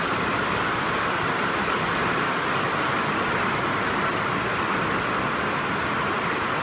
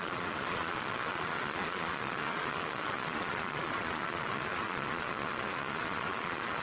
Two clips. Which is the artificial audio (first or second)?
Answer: second